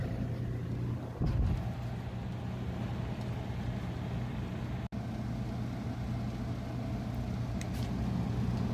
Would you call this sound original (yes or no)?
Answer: yes